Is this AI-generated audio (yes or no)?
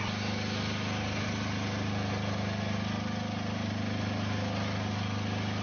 no